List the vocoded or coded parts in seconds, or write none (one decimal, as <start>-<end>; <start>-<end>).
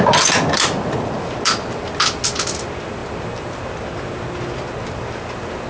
none